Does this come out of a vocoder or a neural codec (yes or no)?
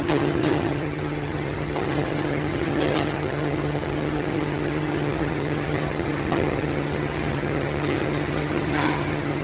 yes